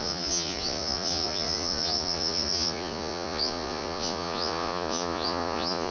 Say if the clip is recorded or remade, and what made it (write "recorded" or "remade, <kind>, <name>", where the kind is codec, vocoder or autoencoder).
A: remade, vocoder, Vocos